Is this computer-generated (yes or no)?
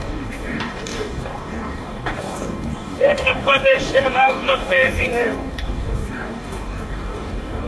yes